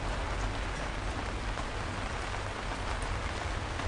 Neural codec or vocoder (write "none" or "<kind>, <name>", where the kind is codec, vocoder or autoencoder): none